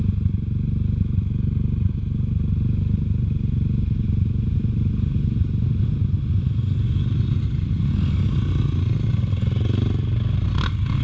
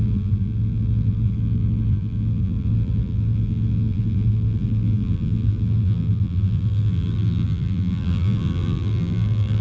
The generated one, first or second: second